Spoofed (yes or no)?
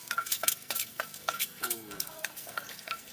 yes